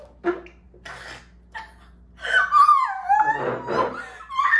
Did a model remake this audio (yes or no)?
no